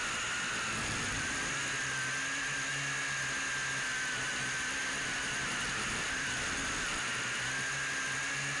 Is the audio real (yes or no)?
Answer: yes